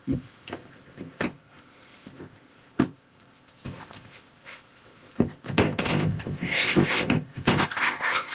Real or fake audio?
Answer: fake